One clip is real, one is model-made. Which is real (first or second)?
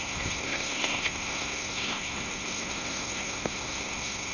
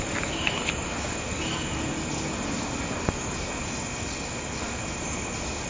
second